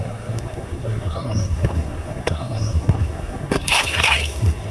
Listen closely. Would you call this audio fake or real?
fake